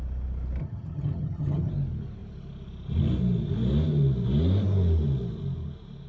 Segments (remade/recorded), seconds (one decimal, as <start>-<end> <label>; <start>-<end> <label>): 0.0-0.6 recorded; 0.6-1.7 remade; 1.7-6.1 recorded

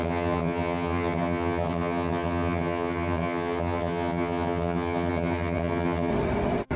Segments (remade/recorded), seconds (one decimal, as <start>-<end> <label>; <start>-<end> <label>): 0.0-6.1 remade; 6.1-6.8 recorded

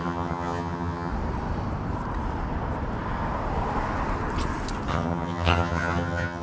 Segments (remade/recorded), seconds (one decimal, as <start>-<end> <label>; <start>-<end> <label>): 0.0-1.1 remade; 1.1-4.9 recorded; 4.9-6.4 remade

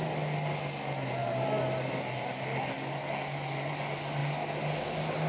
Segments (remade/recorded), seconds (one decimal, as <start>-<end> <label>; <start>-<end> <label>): 0.0-5.3 recorded

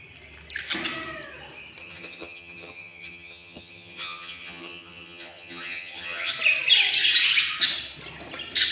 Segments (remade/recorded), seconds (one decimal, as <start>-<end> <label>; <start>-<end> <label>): 0.0-1.8 recorded; 1.8-6.3 remade; 6.3-8.7 recorded

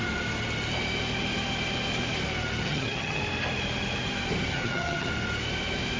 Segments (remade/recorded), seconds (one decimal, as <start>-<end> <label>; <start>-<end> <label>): 0.0-2.6 recorded; 2.6-3.2 remade; 3.2-4.5 recorded; 4.5-5.1 remade; 5.1-6.0 recorded